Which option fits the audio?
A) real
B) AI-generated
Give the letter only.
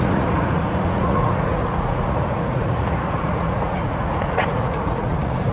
B